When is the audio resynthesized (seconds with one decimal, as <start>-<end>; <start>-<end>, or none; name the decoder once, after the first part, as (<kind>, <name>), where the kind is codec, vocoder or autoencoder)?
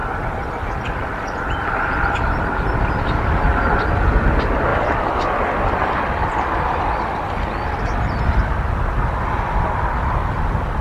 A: none